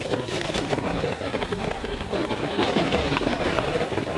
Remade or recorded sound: remade